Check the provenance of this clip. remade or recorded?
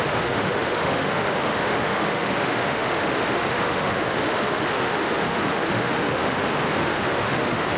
remade